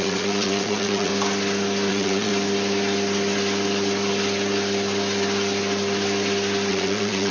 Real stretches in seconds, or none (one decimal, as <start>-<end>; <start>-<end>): 1.1-1.9; 2.3-6.7